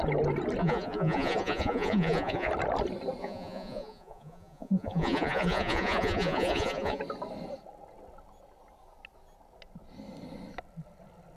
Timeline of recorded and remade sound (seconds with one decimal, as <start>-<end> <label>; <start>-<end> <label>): 0.0-0.6 recorded; 0.6-2.5 remade; 2.5-3.2 recorded; 3.2-7.0 remade; 7.0-11.4 recorded

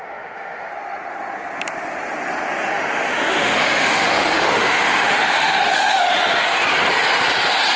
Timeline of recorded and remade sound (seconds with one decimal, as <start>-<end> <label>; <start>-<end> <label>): 0.0-0.7 remade; 0.7-2.7 recorded; 2.7-6.2 remade; 6.2-7.8 recorded